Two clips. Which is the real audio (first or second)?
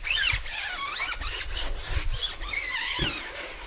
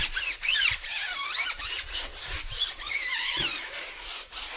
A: first